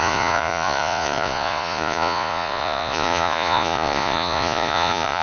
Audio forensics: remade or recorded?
remade